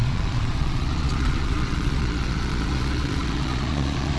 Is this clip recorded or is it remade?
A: remade